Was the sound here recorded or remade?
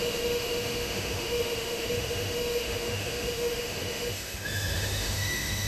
remade